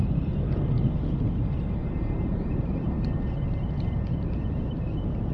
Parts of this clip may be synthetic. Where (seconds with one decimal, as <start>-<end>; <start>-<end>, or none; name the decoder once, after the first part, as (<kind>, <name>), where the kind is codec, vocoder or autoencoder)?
1.8-5.3 (vocoder, BigVGAN v2)